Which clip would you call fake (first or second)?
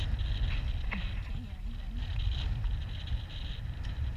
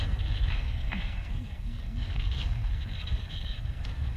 second